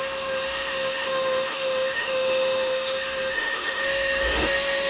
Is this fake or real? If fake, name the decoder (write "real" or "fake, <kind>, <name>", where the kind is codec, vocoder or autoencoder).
fake, autoencoder, DAC-VAE